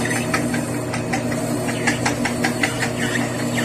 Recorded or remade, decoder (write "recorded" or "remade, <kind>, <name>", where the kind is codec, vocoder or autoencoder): recorded